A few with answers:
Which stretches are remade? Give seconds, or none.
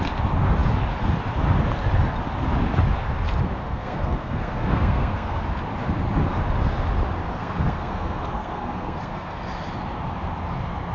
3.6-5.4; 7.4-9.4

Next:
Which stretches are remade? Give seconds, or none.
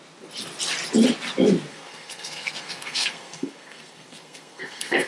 1.7-5.1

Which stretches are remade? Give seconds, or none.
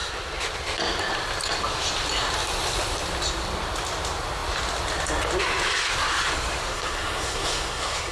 6.7-8.1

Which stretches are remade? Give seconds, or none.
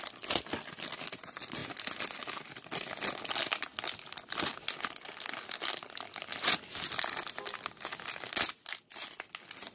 none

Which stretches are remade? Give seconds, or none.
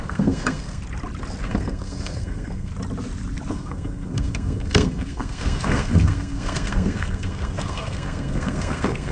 0.0-0.8; 1.4-2.7; 3.5-9.1